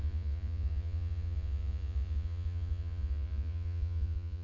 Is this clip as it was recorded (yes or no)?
no